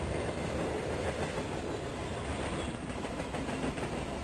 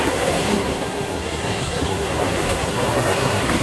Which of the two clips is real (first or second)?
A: first